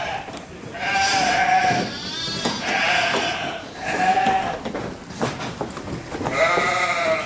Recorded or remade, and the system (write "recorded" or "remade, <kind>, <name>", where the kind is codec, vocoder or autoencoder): recorded